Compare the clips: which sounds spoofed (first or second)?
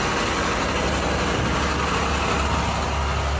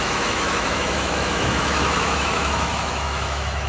second